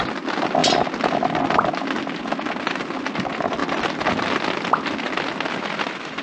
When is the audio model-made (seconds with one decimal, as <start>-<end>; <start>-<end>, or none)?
none